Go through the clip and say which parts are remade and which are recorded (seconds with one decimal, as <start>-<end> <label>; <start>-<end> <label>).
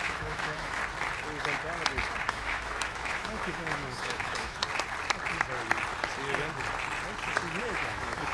0.0-0.8 remade; 0.8-2.3 recorded; 2.3-4.6 remade; 4.6-7.6 recorded; 7.6-8.3 remade